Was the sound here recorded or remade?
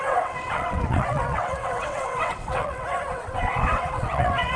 remade